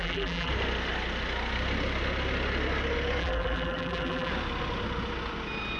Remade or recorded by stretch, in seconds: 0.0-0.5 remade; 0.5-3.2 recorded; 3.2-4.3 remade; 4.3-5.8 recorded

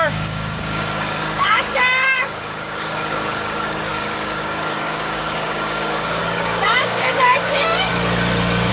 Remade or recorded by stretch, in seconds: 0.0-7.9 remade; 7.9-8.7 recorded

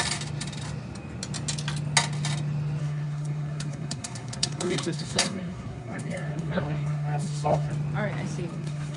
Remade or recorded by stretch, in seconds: 0.0-2.8 recorded; 2.8-7.7 remade; 7.7-8.5 recorded; 8.5-9.0 remade

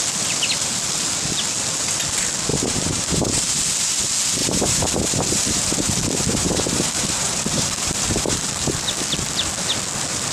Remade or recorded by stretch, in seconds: 0.0-2.5 recorded; 2.5-3.3 remade; 3.3-4.4 recorded; 4.4-8.7 remade; 8.7-10.3 recorded